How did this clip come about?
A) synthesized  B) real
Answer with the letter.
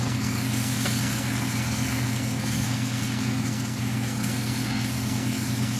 A